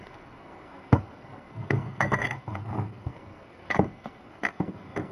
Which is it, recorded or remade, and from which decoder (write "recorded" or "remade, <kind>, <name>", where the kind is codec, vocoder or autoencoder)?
remade, codec, SNAC